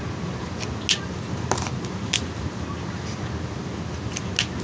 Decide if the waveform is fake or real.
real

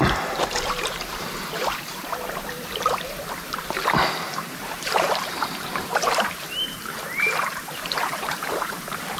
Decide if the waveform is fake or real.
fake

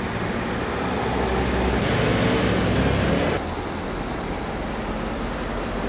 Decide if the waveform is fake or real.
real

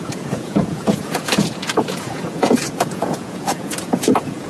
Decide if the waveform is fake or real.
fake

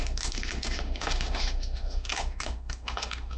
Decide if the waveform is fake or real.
fake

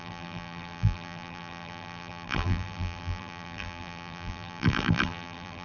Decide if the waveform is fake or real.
fake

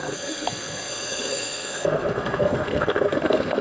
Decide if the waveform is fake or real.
fake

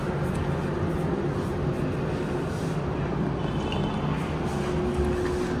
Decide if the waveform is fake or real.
real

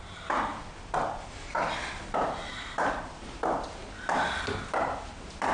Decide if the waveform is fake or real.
real